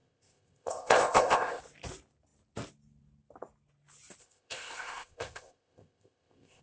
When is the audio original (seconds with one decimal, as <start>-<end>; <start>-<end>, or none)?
1.6-4.2